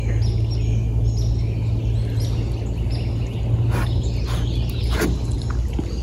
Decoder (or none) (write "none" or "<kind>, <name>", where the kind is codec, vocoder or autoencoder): none